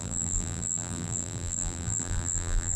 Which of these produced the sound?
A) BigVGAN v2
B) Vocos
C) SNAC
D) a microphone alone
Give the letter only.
A